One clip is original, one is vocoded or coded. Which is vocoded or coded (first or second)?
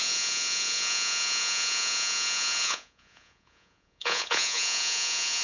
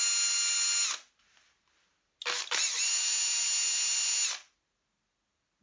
first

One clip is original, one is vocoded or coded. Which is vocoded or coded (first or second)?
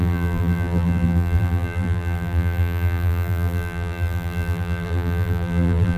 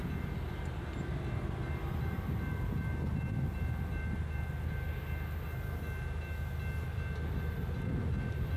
first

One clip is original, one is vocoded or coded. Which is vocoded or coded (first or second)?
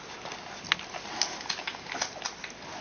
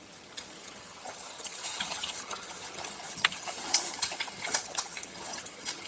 second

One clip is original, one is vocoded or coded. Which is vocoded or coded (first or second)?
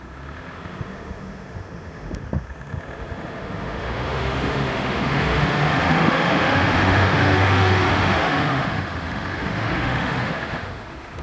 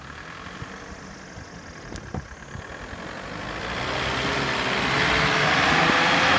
first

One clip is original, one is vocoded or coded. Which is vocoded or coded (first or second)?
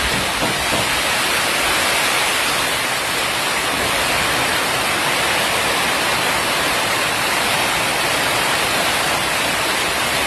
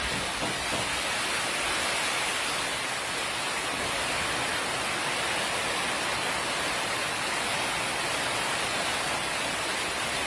first